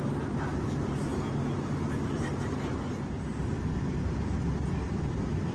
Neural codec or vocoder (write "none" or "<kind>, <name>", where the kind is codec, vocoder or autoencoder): none